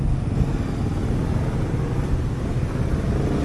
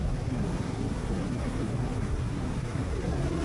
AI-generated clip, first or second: second